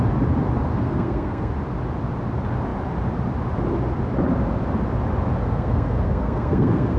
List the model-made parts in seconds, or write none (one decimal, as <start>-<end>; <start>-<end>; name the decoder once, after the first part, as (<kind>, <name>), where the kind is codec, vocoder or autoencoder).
0.7-1.5 (codec, SNAC); 5.4-7.0